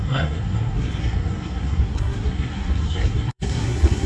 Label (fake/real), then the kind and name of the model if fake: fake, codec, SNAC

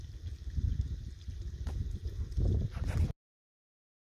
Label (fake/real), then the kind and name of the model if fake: real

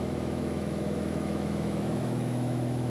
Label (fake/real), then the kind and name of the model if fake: fake, autoencoder, DAC-VAE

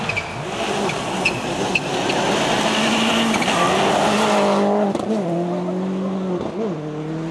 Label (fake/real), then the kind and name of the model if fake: real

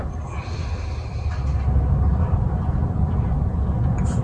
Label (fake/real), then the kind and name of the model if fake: real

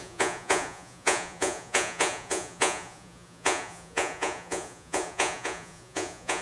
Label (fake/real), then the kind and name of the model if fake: fake, vocoder, Vocos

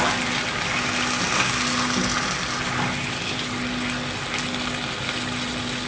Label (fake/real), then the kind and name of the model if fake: real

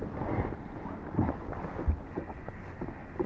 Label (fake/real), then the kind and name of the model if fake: real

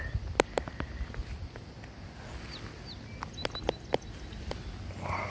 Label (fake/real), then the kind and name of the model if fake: real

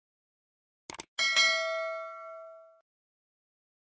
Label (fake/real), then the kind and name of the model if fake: real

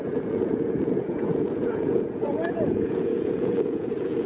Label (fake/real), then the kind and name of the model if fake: fake, vocoder, Vocos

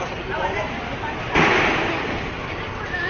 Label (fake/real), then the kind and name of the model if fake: fake, vocoder, BigVGAN v2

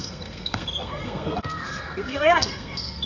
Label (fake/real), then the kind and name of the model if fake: fake, codec, SNAC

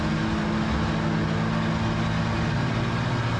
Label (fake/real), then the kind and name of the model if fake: real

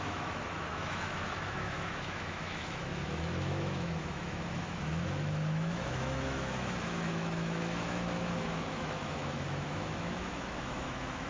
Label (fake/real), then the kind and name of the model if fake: fake, autoencoder, DAC-VAE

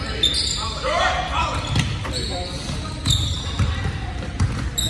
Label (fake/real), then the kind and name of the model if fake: real